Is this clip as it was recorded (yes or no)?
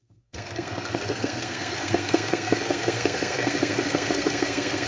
no